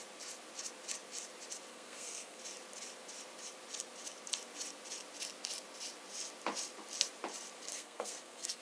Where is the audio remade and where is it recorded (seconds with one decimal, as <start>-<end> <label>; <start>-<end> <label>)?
0.0-1.7 recorded; 1.7-2.4 remade; 2.4-7.7 recorded; 7.7-8.6 remade